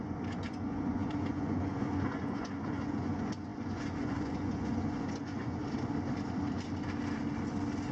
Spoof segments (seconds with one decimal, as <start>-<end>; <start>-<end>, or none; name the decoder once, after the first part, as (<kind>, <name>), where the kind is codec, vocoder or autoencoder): 0.0-5.6 (vocoder, Vocos)